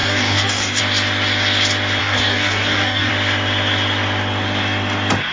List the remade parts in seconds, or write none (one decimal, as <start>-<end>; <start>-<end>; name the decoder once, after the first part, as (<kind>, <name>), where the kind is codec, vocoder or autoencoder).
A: 0.0-0.8 (codec, DAC); 2.0-3.1

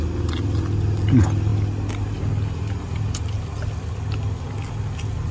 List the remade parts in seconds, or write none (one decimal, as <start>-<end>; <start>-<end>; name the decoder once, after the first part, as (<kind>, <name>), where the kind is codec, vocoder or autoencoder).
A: none

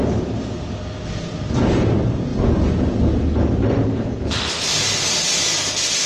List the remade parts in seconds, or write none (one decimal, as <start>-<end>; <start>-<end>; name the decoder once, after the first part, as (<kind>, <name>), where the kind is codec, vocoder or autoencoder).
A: none

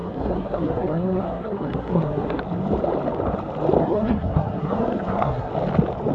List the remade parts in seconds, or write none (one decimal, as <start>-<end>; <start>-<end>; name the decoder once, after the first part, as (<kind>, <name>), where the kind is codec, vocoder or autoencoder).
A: 0.0-2.4 (codec, SNAC); 3.8-5.5

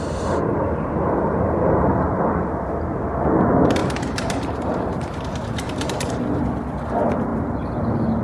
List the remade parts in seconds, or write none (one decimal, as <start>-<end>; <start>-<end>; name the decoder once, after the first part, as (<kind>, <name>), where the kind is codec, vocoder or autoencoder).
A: 3.8-6.1 (vocoder, BigVGAN v2)

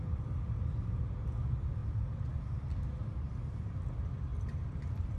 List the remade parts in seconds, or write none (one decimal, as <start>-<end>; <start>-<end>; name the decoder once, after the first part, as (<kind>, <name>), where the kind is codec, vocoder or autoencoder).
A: 1.8-2.4 (vocoder, BigVGAN v2); 4.3-5.2

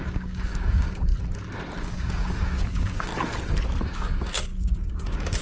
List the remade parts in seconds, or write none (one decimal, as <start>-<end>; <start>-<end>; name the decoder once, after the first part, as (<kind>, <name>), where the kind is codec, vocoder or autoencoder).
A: 0.0-1.1 (codec, DAC); 1.8-3.1; 3.8-5.4